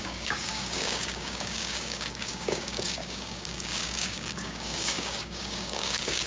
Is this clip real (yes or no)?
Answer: no